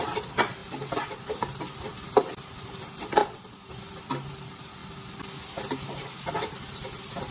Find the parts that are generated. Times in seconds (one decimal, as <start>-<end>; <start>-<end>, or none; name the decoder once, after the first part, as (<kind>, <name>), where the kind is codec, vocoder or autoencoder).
3.2-3.7 (vocoder, BigVGAN v2)